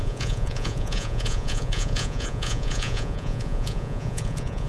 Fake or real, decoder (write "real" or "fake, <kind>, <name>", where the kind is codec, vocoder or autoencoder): fake, vocoder, Vocos